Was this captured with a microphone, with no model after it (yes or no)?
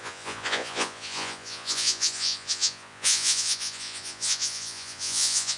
no